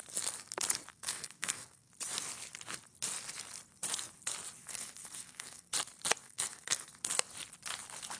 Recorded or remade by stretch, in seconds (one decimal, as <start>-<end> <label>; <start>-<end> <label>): 0.0-0.9 recorded; 0.9-1.9 remade; 1.9-4.6 recorded; 4.6-5.7 remade; 5.7-6.2 recorded; 6.2-6.9 remade; 6.9-8.2 recorded